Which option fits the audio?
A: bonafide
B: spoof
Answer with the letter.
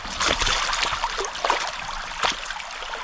A